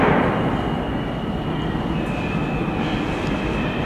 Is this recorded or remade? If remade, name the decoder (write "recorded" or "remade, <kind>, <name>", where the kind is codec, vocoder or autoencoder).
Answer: recorded